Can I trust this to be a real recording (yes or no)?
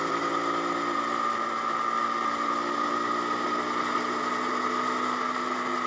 yes